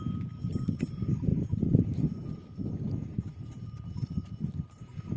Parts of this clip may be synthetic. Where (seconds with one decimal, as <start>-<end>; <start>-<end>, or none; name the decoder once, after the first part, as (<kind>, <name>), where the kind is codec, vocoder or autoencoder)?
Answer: none